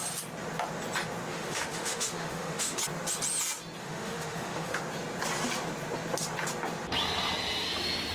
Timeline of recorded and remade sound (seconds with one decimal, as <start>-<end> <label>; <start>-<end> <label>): 0.0-1.3 recorded; 1.3-2.8 remade; 2.8-3.8 recorded; 3.8-4.8 remade; 4.8-8.1 recorded